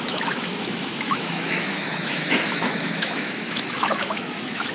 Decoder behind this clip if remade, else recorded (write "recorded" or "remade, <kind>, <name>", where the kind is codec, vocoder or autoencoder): remade, autoencoder, DAC-VAE